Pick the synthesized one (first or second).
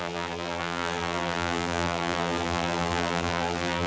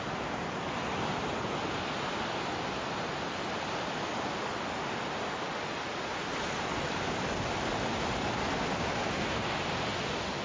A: first